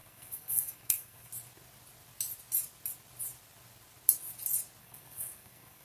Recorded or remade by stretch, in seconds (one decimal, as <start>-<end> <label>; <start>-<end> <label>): 0.0-1.3 remade; 1.3-4.8 recorded; 4.8-5.8 remade